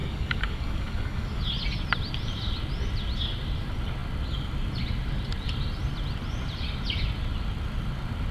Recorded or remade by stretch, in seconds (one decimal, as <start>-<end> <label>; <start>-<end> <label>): 0.0-1.4 remade; 1.4-8.3 recorded